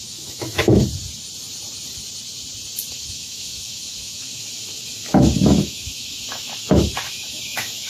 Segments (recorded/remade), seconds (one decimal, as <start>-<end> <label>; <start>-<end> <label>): 0.0-0.8 remade; 0.8-2.9 recorded; 2.9-7.9 remade